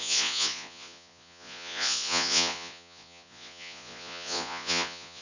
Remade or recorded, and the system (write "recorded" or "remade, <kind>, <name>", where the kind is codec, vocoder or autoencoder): remade, vocoder, Vocos